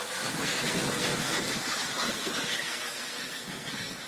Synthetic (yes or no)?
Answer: yes